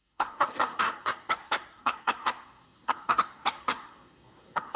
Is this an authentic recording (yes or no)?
no